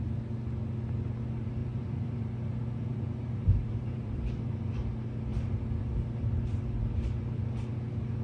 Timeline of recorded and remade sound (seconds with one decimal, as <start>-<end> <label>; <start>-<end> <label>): 0.0-1.6 recorded; 1.6-2.2 remade; 2.2-2.9 recorded; 2.9-4.4 remade; 4.4-8.2 recorded